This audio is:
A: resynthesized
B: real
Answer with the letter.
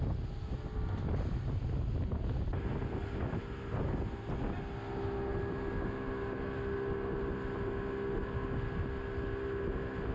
B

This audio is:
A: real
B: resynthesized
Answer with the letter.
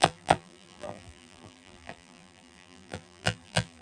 B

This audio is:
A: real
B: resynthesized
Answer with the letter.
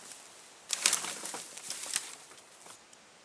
A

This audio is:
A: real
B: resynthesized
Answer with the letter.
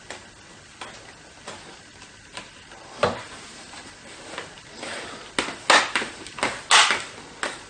A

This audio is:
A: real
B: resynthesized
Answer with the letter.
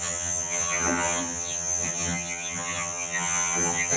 B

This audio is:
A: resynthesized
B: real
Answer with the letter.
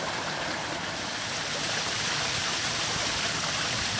A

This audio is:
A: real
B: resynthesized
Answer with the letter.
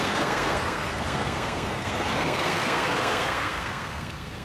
B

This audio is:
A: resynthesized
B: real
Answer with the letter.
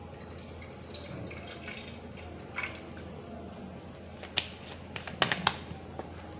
B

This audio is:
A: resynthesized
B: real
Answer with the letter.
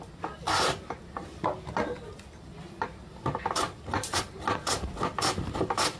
B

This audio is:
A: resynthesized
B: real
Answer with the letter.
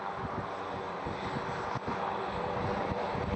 B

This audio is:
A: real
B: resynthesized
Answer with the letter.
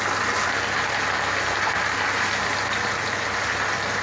A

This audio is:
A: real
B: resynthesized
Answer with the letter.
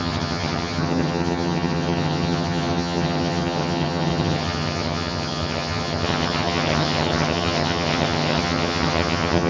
B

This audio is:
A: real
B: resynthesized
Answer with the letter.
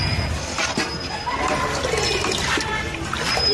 A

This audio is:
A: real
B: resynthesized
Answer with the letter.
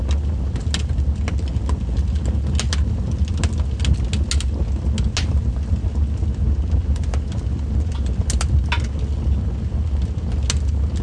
A